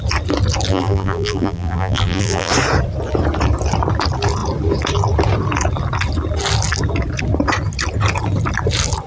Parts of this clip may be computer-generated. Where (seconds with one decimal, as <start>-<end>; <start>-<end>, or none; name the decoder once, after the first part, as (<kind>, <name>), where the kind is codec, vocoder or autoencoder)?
0.7-2.5 (vocoder, BigVGAN v2)